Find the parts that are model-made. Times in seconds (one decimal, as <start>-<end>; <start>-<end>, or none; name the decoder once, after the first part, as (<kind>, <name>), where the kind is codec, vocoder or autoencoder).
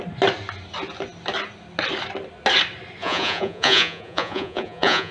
3.0-5.1 (vocoder, Vocos)